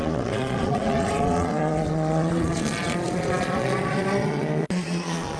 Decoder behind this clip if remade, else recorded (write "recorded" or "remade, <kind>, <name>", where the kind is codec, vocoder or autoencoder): remade, vocoder, Vocos